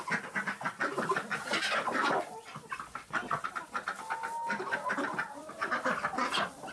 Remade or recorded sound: recorded